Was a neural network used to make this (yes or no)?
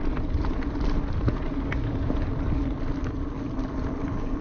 no